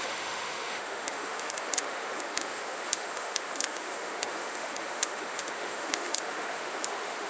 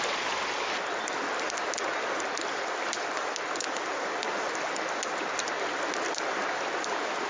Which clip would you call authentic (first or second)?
second